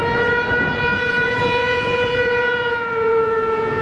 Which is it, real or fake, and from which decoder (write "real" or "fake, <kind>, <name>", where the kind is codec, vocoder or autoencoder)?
fake, vocoder, Vocos